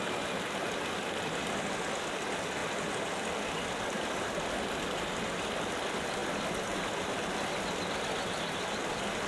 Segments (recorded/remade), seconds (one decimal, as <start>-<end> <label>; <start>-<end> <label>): 0.0-9.3 recorded